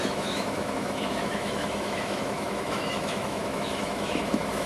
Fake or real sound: fake